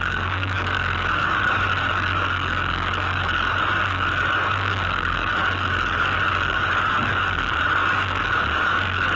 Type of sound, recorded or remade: remade